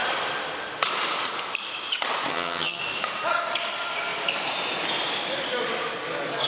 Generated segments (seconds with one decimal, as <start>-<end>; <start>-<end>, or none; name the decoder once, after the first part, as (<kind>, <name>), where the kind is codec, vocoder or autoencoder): 2.3-2.8 (vocoder, HiFi-GAN)

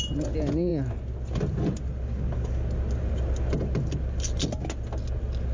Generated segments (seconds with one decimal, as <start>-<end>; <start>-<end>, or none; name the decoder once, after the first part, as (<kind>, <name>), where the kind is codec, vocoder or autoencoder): none

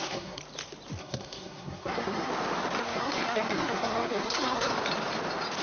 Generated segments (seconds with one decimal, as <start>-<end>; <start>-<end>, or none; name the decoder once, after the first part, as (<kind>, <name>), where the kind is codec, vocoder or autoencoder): 0.0-0.4 (codec, SNAC); 1.0-2.3; 2.8-4.7

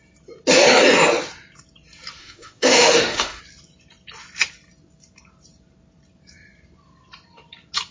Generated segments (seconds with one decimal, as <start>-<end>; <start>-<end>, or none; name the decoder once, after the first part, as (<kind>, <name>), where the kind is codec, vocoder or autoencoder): 2.2-3.4 (autoencoder, DAC-VAE)

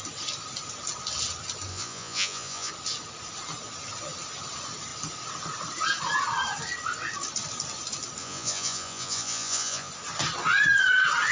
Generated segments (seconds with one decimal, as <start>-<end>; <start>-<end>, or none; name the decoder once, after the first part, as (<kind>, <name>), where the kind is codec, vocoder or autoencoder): 1.7-2.7 (vocoder, Vocos); 8.2-9.9

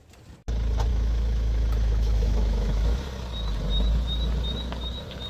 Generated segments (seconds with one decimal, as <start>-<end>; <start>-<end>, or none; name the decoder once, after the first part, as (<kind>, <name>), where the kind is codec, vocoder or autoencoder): 0.9-3.0 (autoencoder, DAC-VAE)

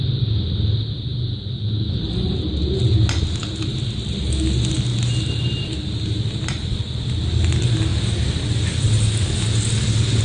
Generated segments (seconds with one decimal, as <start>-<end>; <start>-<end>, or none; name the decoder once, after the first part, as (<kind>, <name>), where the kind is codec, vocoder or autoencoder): none

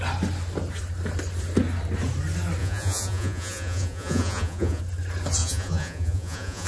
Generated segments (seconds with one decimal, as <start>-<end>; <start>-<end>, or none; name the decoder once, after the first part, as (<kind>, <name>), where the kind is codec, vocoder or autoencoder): 2.6-4.8 (vocoder, Vocos); 5.4-6.7